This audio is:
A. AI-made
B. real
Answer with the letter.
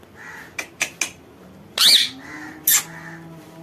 B